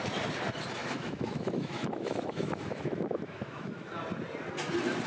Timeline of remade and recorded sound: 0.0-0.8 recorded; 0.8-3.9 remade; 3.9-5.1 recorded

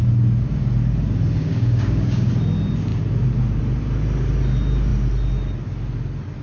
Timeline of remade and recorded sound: 0.0-1.4 recorded; 1.4-2.3 remade; 2.3-6.4 recorded